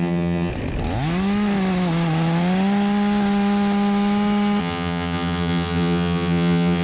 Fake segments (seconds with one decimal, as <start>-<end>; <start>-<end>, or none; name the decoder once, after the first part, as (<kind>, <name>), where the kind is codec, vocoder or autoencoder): 0.0-0.5 (vocoder, HiFi-GAN); 4.6-6.8